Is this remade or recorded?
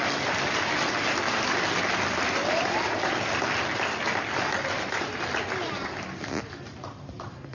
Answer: recorded